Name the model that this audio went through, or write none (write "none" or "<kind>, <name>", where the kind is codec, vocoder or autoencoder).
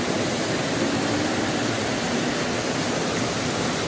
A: none